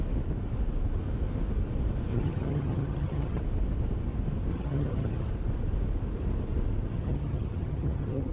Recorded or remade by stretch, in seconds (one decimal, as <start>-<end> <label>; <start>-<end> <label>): 0.0-2.1 recorded; 2.1-3.4 remade; 3.4-4.5 recorded; 4.5-5.3 remade; 5.3-6.9 recorded; 6.9-8.3 remade